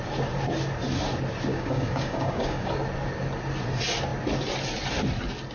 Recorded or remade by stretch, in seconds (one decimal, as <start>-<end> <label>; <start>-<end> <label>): 0.0-1.5 recorded; 1.5-2.7 remade; 2.7-5.5 recorded